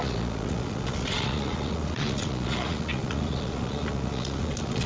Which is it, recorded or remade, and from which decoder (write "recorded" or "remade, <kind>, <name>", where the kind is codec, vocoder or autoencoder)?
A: remade, vocoder, Vocos